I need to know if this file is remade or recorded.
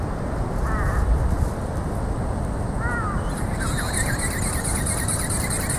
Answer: recorded